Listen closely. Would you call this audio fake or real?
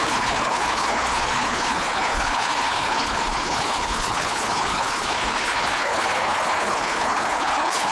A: fake